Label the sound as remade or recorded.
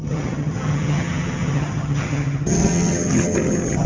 remade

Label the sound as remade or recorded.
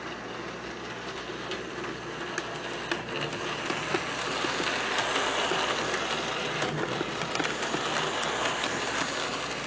recorded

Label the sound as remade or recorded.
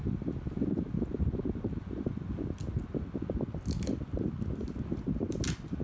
recorded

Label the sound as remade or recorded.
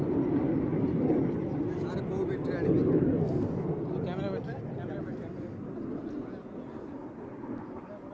recorded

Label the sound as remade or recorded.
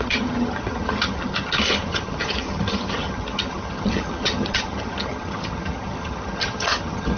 remade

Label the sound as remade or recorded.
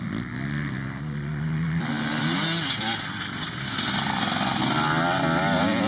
recorded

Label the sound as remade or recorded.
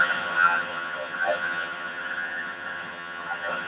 remade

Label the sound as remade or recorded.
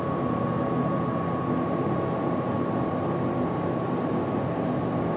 recorded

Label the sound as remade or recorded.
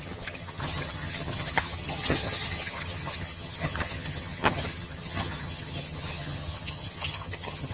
remade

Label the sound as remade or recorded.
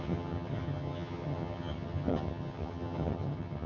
remade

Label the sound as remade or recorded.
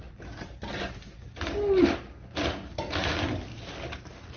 recorded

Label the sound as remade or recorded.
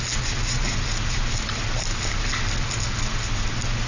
recorded